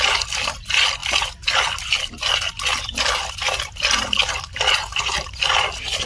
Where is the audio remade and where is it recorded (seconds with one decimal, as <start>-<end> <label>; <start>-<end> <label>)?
0.0-6.1 recorded